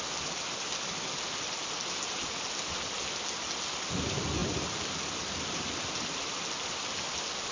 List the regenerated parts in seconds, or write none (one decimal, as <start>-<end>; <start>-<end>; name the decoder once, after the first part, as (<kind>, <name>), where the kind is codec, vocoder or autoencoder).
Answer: none